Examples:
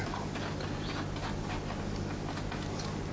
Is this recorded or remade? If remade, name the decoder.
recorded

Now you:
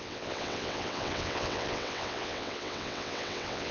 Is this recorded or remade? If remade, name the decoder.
remade, vocoder, WaveNeXt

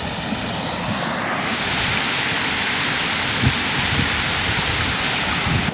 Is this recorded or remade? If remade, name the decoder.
recorded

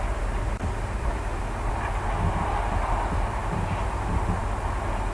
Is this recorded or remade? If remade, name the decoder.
recorded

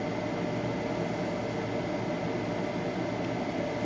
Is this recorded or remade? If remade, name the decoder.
recorded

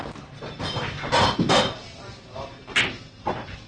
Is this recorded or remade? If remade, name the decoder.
recorded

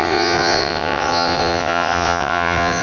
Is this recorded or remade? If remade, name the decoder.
remade, vocoder, WaveNeXt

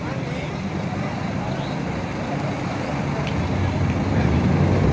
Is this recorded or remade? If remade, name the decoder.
recorded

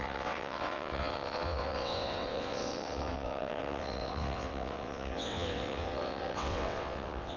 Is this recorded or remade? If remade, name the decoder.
remade, vocoder, WaveNeXt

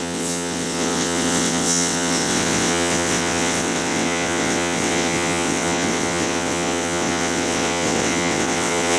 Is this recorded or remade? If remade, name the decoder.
remade, vocoder, WaveNeXt